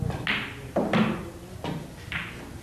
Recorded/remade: recorded